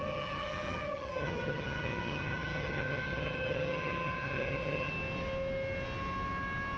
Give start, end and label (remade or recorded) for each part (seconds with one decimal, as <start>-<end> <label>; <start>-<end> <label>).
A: 0.0-4.9 remade; 4.9-6.8 recorded